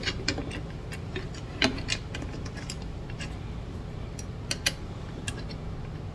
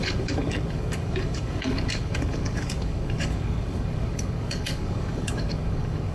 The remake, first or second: second